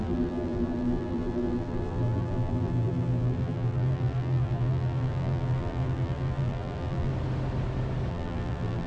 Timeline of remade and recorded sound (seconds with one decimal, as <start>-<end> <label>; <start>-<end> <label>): 0.0-7.1 remade; 7.1-8.1 recorded; 8.1-8.9 remade

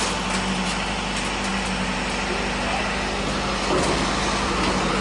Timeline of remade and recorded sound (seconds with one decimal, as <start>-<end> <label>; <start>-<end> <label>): 0.0-5.0 recorded

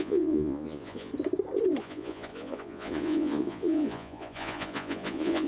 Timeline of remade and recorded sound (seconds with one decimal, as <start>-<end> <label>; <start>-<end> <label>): 0.0-1.1 remade; 1.1-1.8 recorded; 1.8-5.5 remade

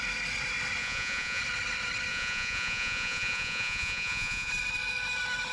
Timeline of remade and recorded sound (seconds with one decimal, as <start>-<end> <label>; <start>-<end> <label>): 0.0-0.8 recorded; 0.8-1.4 remade; 1.4-2.1 recorded; 2.1-4.5 remade; 4.5-5.5 recorded

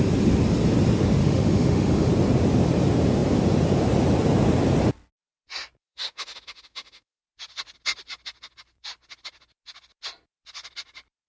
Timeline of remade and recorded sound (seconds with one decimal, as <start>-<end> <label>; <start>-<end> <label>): 0.0-1.2 recorded; 1.2-2.1 remade; 2.1-5.8 recorded; 5.8-7.2 remade; 7.2-11.3 recorded

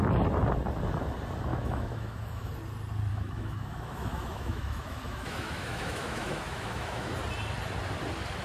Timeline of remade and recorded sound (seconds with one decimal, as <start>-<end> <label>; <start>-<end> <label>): 0.0-1.5 recorded; 1.5-2.5 remade; 2.5-3.1 recorded; 3.1-7.1 remade; 7.1-8.4 recorded

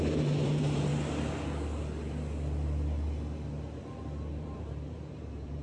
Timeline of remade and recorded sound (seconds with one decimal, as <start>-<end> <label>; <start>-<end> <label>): 0.0-0.9 remade; 0.9-4.3 recorded; 4.3-5.6 remade

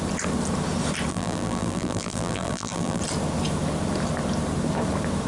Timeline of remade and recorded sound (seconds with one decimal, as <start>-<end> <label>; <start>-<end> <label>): 0.0-1.1 recorded; 1.1-3.0 remade; 3.0-5.3 recorded